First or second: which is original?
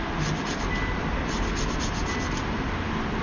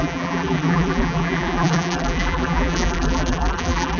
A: first